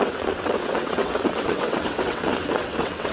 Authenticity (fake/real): fake